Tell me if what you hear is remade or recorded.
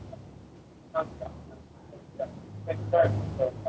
recorded